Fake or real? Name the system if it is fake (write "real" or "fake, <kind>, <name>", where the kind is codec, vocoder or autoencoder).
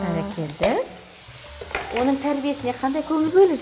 real